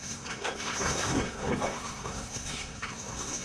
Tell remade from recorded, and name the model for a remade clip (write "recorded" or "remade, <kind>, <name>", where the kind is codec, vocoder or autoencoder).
remade, codec, SNAC